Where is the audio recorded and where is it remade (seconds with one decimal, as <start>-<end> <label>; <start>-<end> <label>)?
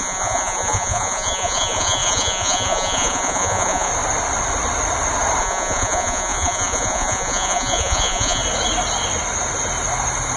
0.0-3.9 remade; 3.9-5.4 recorded; 5.4-8.4 remade; 8.4-10.4 recorded